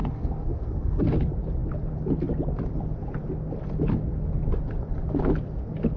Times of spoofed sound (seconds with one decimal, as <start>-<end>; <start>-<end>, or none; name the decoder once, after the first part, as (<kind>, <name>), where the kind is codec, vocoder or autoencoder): 0.0-1.1 (codec, SNAC)